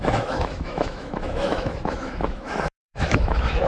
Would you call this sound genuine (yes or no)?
no